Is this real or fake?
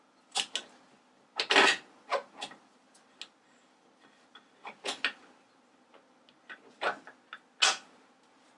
real